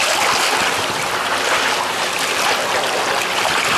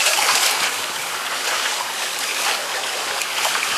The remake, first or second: second